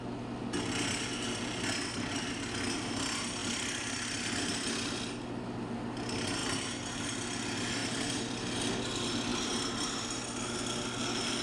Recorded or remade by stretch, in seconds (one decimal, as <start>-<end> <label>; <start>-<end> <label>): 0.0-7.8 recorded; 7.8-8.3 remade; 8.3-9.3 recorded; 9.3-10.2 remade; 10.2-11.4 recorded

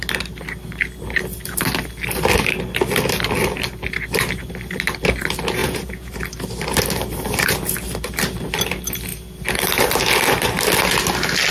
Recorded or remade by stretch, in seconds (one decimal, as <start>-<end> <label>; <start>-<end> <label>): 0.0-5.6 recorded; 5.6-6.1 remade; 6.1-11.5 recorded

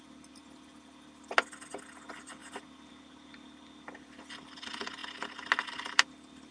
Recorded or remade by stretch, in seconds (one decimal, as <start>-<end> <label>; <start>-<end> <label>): 0.0-0.4 remade; 0.4-2.0 recorded; 2.0-2.4 remade; 2.4-3.0 recorded; 3.0-5.0 remade; 5.0-5.7 recorded; 5.7-6.5 remade